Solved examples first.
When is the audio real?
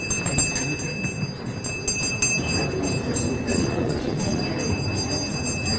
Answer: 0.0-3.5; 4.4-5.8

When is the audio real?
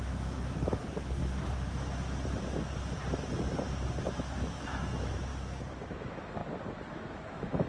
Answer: 1.2-4.0; 5.3-5.9; 6.4-6.9